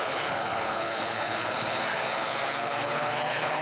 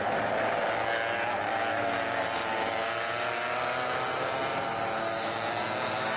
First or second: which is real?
second